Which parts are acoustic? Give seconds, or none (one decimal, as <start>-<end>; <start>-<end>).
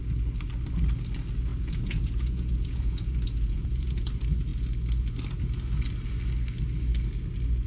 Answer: 0.0-1.5; 4.1-7.7